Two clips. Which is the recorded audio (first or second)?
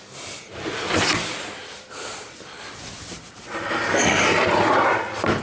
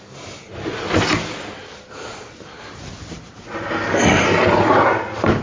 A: second